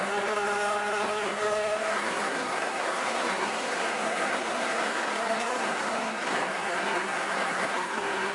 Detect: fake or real fake